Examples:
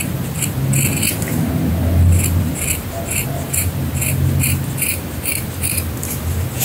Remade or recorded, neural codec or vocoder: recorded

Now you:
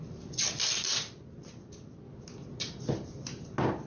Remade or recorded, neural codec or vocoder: recorded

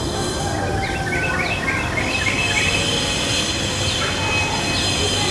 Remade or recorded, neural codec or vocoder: recorded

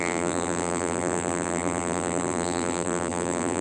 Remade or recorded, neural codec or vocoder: remade, vocoder, BigVGAN v2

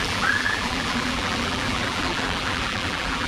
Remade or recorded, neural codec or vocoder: remade, vocoder, BigVGAN v2